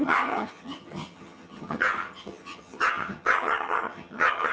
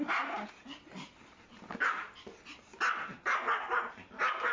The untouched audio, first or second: second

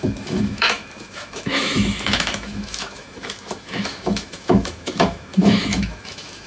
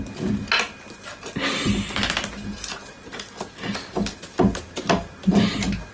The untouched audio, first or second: second